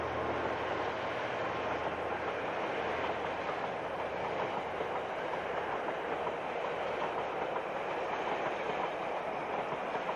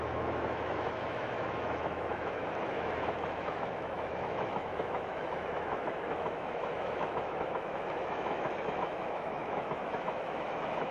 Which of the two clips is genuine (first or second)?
first